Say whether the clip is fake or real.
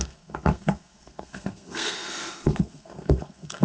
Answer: fake